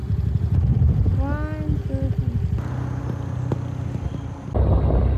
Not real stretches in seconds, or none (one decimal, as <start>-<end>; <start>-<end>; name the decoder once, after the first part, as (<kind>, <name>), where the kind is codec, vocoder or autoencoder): none